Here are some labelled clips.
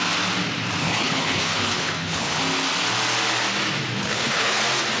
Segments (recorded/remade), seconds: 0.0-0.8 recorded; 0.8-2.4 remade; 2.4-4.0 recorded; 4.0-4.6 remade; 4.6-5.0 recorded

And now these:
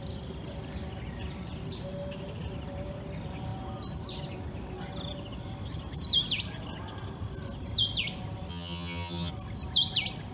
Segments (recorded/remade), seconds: 0.0-8.5 recorded; 8.5-9.3 remade; 9.3-10.3 recorded

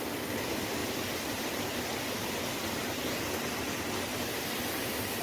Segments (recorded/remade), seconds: 0.0-2.2 recorded; 2.2-2.9 remade; 2.9-4.1 recorded; 4.1-4.8 remade; 4.8-5.2 recorded

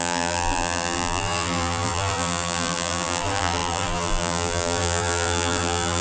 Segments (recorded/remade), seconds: 0.0-6.0 remade